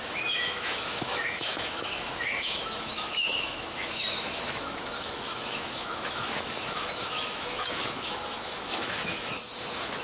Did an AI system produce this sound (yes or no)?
yes